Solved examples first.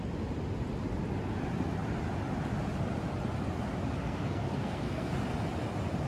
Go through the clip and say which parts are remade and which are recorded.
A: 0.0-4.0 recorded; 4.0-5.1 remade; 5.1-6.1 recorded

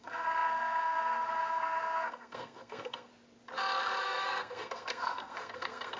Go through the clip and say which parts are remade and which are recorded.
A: 0.0-3.1 remade; 3.1-4.0 recorded; 4.0-6.0 remade

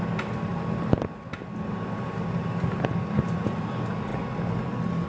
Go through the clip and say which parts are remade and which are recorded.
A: 0.0-5.1 recorded